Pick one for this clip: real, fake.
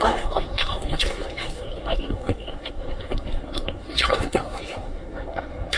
fake